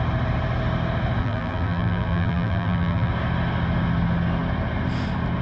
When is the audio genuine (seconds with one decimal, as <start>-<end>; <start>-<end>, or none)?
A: 0.0-1.2; 3.1-5.4